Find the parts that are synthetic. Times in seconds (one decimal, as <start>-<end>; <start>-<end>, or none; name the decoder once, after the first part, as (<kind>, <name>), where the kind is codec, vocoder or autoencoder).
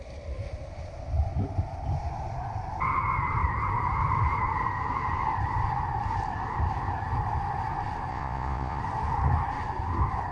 8.1-8.8 (vocoder, Vocos)